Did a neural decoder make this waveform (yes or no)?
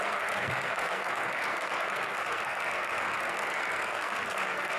yes